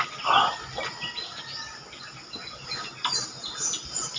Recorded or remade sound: recorded